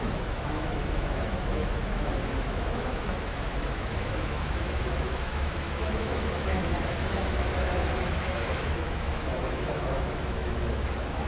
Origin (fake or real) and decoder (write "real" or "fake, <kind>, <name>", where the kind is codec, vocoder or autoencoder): fake, autoencoder, DAC-VAE